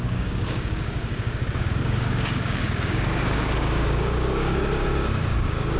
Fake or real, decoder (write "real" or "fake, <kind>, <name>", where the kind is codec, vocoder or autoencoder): fake, codec, DAC